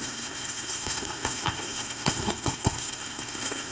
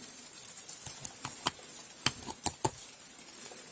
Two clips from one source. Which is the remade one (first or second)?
first